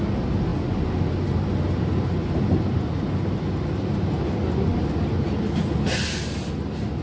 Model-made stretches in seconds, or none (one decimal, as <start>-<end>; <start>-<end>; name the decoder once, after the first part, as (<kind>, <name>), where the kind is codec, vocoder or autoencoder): none